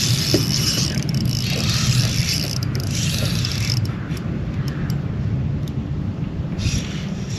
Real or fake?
fake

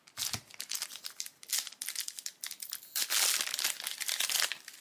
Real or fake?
real